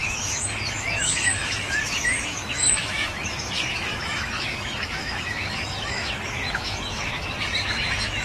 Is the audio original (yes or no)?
no